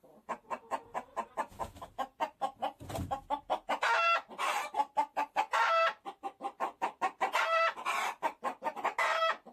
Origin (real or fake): real